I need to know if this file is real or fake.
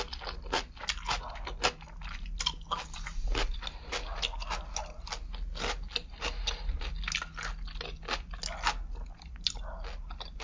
real